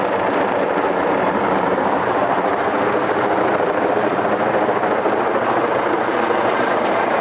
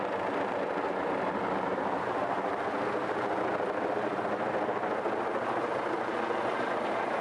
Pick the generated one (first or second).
first